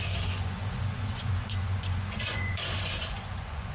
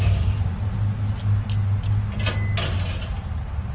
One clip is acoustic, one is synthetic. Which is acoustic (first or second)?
second